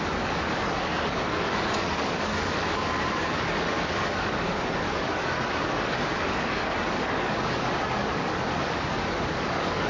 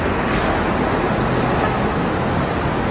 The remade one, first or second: first